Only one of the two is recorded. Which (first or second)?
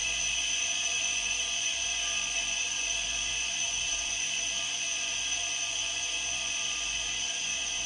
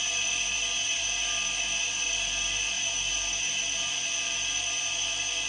second